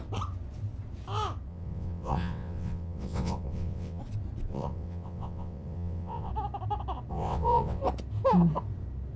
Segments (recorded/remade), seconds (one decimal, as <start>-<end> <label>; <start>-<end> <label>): 0.0-1.5 recorded; 1.5-4.0 remade; 4.0-4.5 recorded; 4.5-6.3 remade; 6.3-7.1 recorded; 7.1-7.8 remade; 7.8-9.2 recorded